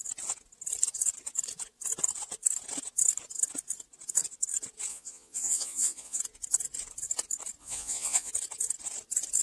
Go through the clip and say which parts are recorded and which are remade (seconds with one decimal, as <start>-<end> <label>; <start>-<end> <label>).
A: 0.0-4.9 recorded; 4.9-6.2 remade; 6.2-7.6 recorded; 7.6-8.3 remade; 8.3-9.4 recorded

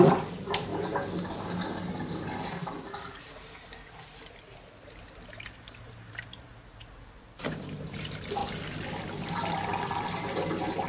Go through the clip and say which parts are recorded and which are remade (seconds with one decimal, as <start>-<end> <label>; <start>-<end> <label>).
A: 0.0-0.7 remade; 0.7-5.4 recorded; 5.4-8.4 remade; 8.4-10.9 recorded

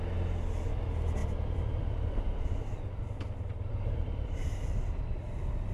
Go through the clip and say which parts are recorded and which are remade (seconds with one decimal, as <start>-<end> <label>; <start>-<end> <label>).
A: 0.0-5.7 recorded

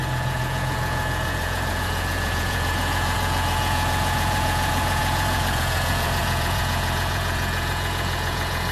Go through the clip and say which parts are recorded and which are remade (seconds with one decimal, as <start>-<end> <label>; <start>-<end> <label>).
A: 0.0-8.7 remade

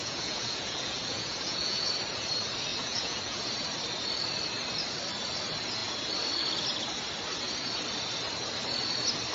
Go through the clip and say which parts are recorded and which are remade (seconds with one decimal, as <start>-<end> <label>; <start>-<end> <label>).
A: 0.0-1.9 remade; 1.9-2.7 recorded; 2.7-3.5 remade; 3.5-9.3 recorded

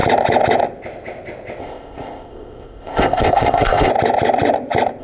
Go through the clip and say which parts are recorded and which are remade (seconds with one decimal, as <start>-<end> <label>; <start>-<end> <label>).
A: 0.0-1.6 recorded; 1.6-3.9 remade; 3.9-5.0 recorded